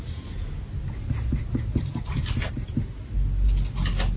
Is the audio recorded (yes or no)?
yes